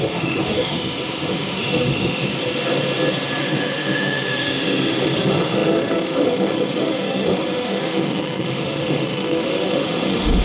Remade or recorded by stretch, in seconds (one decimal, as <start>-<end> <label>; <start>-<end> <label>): 0.0-2.3 remade; 2.3-3.4 recorded; 3.4-10.4 remade